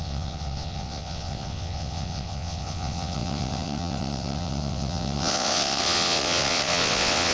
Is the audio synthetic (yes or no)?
yes